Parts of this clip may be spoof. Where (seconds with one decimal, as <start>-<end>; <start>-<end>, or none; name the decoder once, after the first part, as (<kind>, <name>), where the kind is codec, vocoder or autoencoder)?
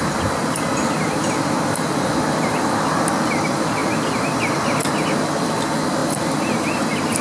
3.8-4.4 (vocoder, BigVGAN v2); 6.0-6.8